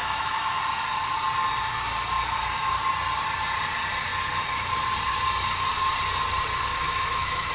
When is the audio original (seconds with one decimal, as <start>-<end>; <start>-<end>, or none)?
0.6-6.7